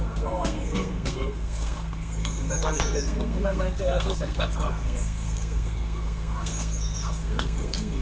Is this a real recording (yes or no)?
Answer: no